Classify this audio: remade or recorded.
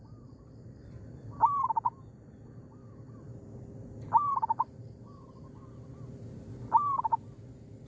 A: recorded